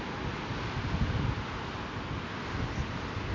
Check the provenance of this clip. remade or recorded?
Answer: recorded